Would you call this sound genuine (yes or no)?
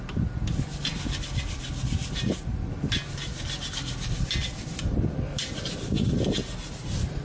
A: yes